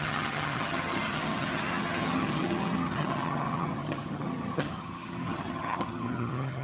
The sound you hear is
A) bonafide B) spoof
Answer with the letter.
B